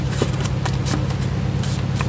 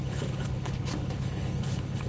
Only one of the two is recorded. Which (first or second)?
first